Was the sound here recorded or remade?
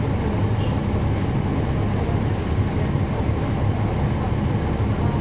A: recorded